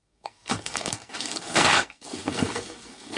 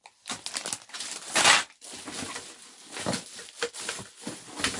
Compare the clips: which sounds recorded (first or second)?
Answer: second